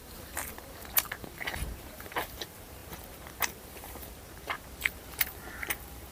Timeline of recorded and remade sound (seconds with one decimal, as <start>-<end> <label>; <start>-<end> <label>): 0.0-6.1 remade